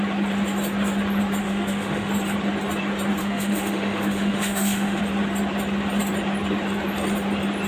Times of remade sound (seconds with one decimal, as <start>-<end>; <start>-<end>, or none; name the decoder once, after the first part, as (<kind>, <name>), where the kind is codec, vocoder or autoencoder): 1.4-2.1 (autoencoder, DAC-VAE); 3.2-5.0